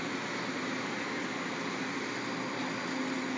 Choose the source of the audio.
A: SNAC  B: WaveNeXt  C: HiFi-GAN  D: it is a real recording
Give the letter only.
D